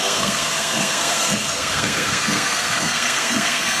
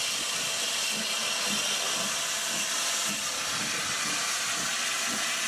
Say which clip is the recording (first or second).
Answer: second